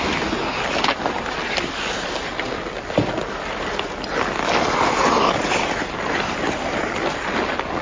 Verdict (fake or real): real